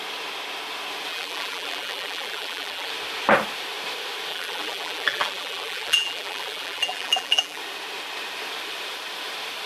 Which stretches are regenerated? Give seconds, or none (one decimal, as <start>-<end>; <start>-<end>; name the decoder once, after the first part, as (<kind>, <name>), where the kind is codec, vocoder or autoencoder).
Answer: 1.1-2.9 (vocoder, BigVGAN v2); 4.3-7.6